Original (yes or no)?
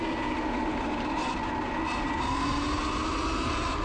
yes